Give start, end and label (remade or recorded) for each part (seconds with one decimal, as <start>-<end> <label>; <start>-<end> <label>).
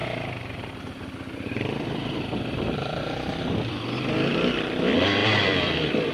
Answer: 0.0-3.7 remade; 3.7-5.2 recorded; 5.2-6.1 remade